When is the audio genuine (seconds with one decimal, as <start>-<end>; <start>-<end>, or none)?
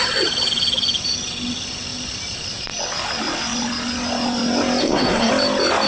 0.0-4.8; 5.3-5.9